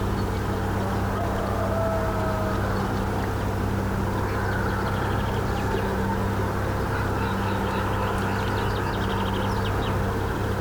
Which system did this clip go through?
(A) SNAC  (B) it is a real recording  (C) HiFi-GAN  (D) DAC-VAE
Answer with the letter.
B